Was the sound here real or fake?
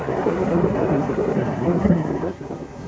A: fake